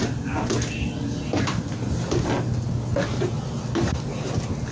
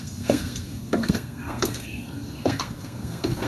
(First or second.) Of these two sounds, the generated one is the second